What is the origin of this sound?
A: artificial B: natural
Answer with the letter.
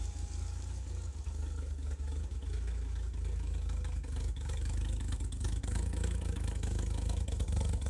A